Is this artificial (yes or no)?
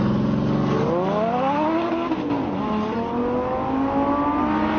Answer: no